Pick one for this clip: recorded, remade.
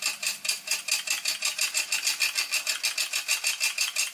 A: recorded